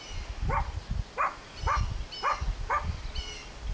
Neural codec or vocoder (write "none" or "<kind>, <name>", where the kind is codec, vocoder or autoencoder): none